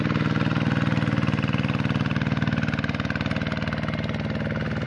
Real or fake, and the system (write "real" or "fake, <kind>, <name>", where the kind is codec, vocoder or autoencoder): real